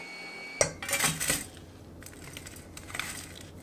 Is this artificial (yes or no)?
no